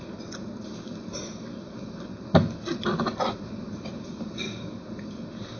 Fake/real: real